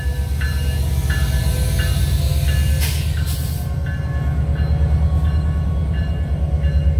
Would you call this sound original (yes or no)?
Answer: yes